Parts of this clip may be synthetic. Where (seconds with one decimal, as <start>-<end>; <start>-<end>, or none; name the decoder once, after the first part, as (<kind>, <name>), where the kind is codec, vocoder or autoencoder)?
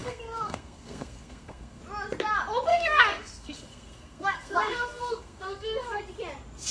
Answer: 0.0-1.8 (codec, SNAC); 2.7-6.0